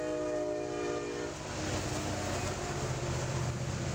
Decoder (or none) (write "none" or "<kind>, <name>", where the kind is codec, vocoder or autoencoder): none